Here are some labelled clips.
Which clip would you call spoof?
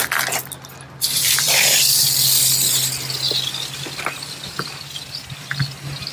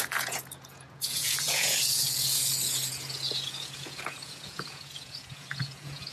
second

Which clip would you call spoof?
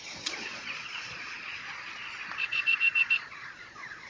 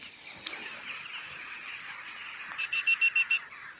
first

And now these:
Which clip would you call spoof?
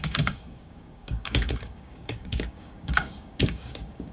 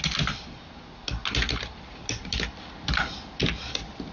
first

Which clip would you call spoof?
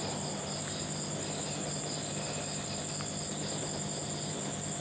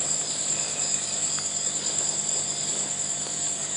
second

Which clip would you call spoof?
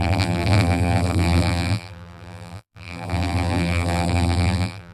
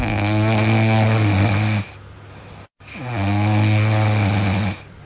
first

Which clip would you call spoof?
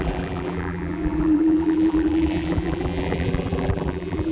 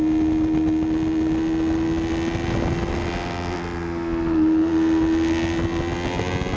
first